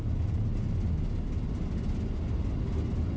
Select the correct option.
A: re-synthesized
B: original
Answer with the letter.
B